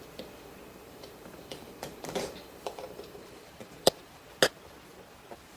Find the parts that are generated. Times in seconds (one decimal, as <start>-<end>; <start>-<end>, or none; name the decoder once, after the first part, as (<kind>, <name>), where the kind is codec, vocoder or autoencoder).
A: 0.8-4.2 (vocoder, BigVGAN v2)